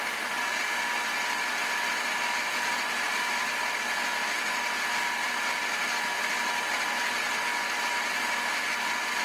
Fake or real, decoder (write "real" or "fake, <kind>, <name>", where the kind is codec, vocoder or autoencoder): real